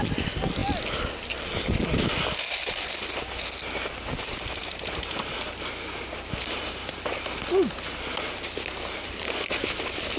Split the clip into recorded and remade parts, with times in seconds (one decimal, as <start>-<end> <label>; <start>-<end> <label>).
0.0-10.2 recorded